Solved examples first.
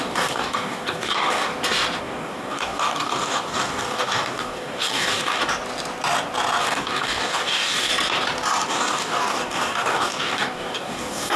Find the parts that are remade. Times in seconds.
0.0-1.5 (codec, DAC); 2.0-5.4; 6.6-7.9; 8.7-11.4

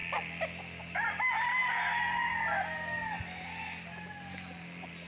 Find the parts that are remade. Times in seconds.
none

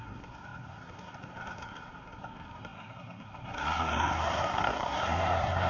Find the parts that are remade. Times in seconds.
0.0-5.7 (codec, SNAC)